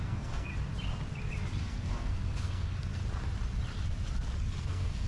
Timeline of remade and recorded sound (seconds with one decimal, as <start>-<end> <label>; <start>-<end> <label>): 0.0-0.5 remade; 0.5-1.6 recorded; 1.6-3.0 remade; 3.0-4.6 recorded; 4.6-5.1 remade